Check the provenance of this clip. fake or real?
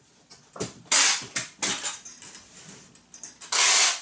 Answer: real